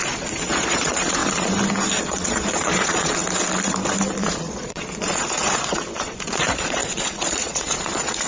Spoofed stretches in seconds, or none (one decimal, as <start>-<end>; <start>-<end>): 0.0-1.2; 2.0-3.2; 4.2-8.3